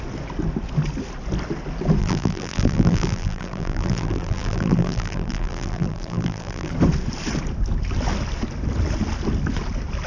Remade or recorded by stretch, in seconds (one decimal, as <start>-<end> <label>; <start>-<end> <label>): 0.0-2.0 recorded; 2.0-6.7 remade; 6.7-10.1 recorded